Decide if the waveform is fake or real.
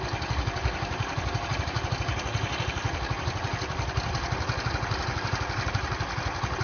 real